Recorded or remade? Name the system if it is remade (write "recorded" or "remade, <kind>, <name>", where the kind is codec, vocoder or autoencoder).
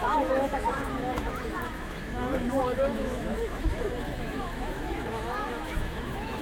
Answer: remade, autoencoder, DAC-VAE